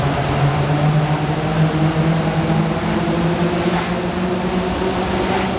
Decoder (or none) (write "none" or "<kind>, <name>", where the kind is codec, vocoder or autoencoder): none